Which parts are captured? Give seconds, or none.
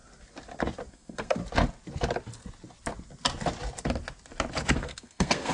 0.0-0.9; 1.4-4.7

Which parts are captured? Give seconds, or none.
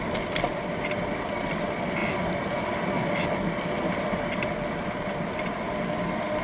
none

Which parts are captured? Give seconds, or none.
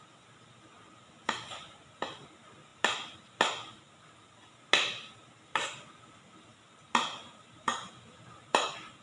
0.0-9.0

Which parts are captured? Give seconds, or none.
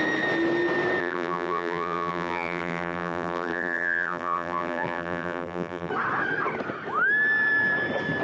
0.0-1.0; 5.9-8.2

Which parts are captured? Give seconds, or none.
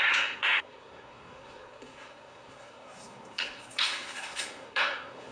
none